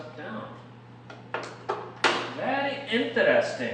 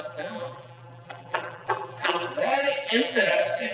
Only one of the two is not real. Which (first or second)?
second